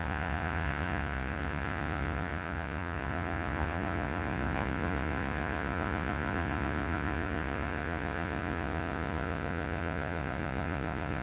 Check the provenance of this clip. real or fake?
fake